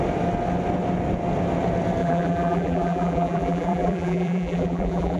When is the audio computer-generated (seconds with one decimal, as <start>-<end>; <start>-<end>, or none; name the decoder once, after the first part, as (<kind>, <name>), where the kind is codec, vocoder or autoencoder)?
2.0-5.2 (vocoder, BigVGAN v2)